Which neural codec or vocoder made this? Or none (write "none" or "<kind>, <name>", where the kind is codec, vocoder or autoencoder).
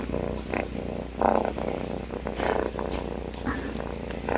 none